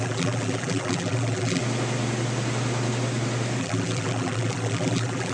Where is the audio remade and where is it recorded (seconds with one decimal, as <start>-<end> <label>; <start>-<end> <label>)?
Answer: 0.0-1.6 remade; 1.6-3.6 recorded; 3.6-5.3 remade